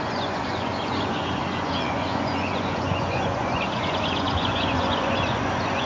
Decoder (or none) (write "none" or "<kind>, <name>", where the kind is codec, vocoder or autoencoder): vocoder, Vocos